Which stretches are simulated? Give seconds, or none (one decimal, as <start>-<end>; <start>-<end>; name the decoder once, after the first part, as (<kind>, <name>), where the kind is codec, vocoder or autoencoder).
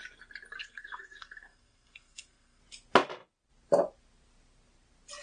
0.6-2.6 (codec, SNAC)